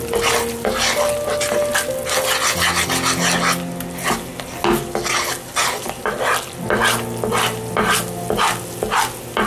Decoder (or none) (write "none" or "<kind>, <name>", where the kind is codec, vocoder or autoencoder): none